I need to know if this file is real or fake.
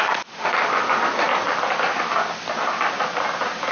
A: real